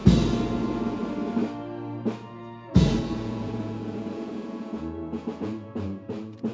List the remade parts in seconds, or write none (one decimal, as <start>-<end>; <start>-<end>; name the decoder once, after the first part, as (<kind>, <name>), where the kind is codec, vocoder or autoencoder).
0.6-1.0 (vocoder, Vocos); 2.7-6.5